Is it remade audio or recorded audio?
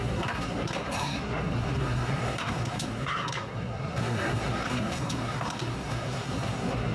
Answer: remade